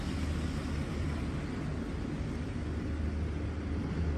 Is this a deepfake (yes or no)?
no